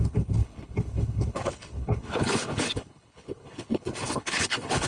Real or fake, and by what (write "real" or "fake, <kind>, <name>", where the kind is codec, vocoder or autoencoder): fake, codec, HILCodec